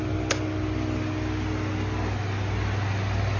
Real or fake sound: real